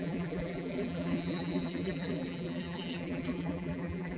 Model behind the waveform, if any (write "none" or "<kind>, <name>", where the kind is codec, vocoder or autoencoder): vocoder, BigVGAN v2